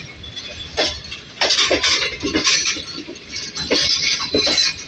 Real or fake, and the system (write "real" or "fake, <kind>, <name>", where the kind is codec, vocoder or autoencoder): real